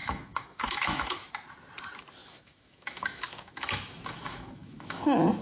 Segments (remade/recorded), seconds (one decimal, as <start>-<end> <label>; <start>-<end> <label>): 0.0-1.3 remade; 1.3-2.2 recorded; 2.2-5.0 remade; 5.0-5.4 recorded